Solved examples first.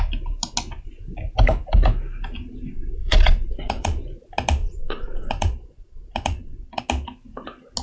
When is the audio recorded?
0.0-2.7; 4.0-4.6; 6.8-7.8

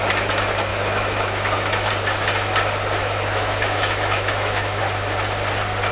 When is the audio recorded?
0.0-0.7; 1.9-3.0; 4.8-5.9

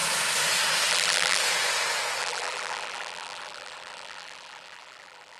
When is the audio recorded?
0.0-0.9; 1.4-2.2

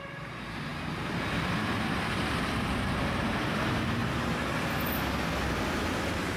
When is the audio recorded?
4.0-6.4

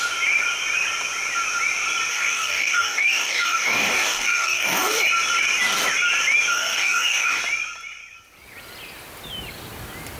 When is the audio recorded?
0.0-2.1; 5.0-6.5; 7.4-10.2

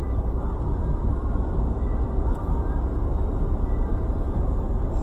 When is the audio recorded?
2.4-3.9; 4.6-5.0

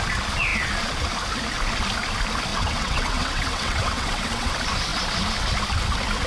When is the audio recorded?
0.0-2.5; 4.5-6.3

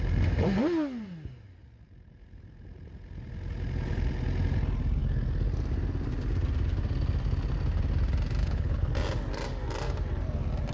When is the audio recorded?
0.0-8.4; 8.9-10.7